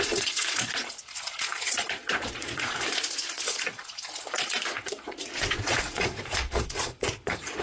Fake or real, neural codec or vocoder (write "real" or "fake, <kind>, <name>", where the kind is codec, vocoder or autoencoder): fake, vocoder, Vocos